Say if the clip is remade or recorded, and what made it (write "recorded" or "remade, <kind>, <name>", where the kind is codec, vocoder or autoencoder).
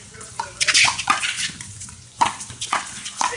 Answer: remade, vocoder, Vocos